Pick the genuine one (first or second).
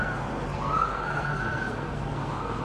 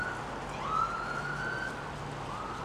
second